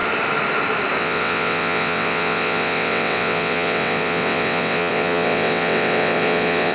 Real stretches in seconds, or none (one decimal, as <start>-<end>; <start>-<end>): 0.0-1.0